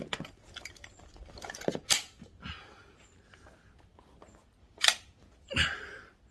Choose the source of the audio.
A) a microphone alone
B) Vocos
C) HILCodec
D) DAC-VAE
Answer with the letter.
A